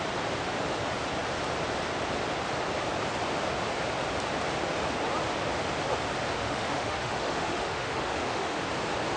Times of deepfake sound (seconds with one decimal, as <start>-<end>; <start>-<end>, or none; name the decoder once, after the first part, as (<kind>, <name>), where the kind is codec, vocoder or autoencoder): 6.4-8.6 (autoencoder, DAC-VAE)